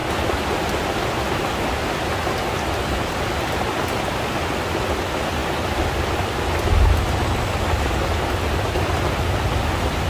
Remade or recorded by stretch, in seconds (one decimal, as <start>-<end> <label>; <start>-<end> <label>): 0.0-10.1 recorded